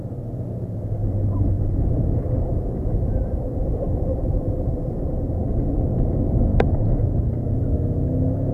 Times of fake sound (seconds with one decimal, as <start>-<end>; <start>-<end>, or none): 1.0-5.4; 6.5-7.5